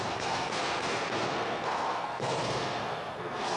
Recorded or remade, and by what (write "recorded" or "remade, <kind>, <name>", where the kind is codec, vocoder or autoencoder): remade, codec, SNAC